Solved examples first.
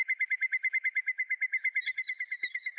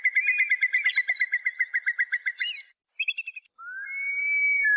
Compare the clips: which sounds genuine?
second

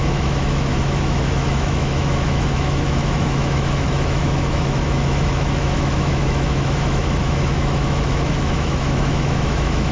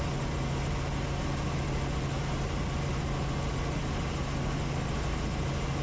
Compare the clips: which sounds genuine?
second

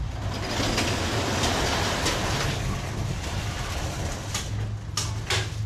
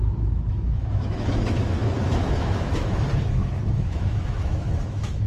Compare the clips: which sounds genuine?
first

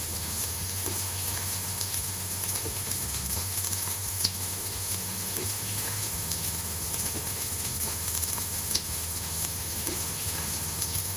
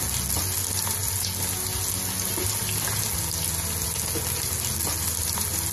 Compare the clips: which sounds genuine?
second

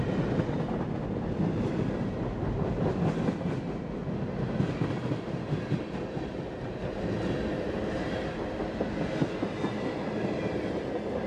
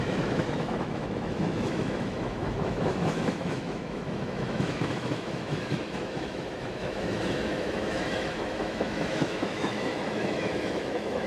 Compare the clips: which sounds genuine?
first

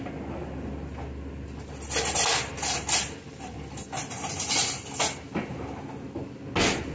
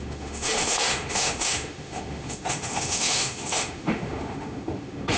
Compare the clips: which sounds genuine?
first